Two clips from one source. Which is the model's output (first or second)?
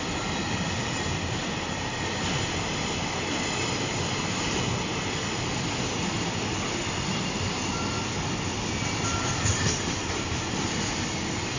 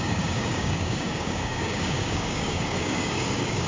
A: second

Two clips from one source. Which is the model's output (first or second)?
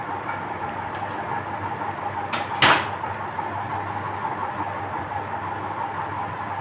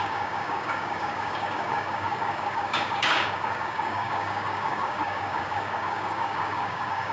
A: second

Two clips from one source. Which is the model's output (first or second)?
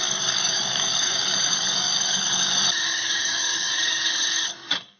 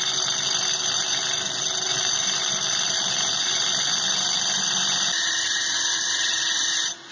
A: first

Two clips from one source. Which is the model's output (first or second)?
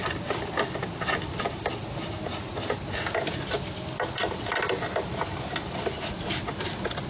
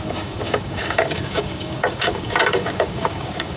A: second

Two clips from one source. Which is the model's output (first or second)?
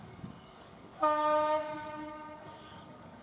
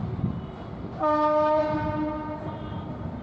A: first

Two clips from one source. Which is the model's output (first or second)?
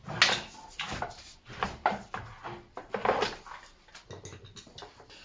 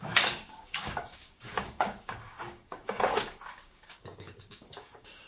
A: second